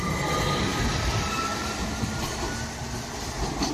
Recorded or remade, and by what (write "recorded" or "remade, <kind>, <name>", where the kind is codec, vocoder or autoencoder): recorded